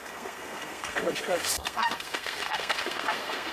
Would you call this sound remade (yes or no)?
yes